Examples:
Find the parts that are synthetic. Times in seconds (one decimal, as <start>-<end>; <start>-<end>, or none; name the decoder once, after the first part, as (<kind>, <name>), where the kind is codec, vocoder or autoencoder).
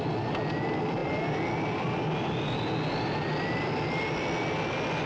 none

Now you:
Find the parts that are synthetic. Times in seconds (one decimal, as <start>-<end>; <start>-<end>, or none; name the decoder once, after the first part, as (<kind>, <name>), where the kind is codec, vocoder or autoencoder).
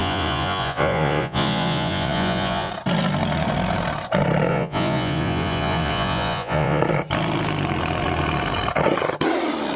0.0-2.7 (vocoder, Vocos); 4.5-6.8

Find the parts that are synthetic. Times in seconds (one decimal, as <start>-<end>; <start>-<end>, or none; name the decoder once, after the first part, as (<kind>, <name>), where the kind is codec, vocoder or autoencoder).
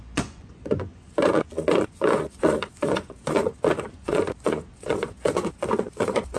0.0-6.4 (vocoder, Vocos)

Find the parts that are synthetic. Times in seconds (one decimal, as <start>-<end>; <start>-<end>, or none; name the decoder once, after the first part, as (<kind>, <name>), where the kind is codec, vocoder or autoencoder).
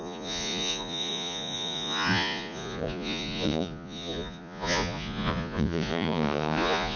0.0-7.0 (vocoder, Vocos)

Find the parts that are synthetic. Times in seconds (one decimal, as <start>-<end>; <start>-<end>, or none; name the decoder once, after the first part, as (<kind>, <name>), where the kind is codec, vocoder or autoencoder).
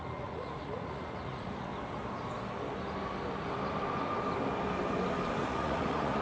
0.0-1.7 (vocoder, Vocos); 5.4-6.2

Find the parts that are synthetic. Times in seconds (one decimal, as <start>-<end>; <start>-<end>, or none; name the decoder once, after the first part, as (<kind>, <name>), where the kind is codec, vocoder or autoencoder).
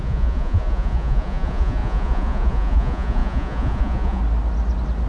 0.0-4.2 (vocoder, Vocos)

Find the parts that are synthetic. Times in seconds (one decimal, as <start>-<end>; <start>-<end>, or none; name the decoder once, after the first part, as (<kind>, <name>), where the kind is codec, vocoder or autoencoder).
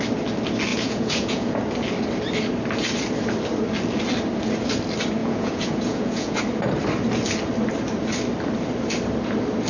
0.7-1.6 (vocoder, Vocos); 5.2-6.4